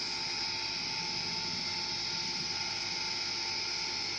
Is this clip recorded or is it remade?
recorded